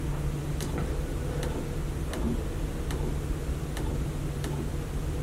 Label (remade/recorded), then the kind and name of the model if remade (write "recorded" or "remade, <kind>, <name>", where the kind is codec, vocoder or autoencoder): recorded